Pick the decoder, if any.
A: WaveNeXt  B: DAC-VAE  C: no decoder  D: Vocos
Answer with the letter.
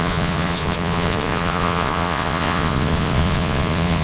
D